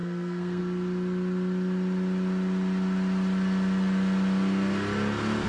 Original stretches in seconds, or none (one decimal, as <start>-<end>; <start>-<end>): 0.6-5.5